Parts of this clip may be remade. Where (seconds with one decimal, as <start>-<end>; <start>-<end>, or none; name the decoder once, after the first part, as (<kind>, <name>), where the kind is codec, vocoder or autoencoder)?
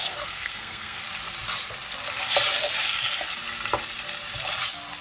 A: 0.0-1.0 (codec, SNAC)